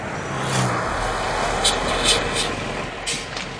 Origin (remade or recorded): recorded